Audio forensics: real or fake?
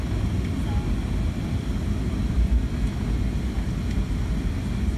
real